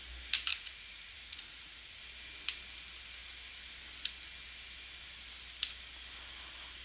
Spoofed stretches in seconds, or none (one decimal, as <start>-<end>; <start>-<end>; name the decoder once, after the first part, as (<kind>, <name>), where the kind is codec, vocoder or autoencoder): 0.5-2.0 (vocoder, Vocos)